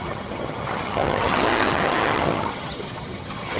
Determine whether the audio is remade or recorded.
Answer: remade